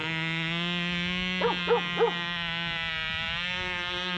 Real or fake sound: real